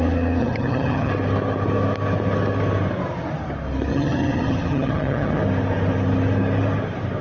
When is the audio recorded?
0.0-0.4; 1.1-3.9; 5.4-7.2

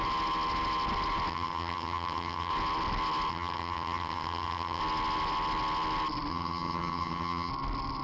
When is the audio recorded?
0.0-1.3; 2.5-3.3; 4.8-6.3; 7.5-8.0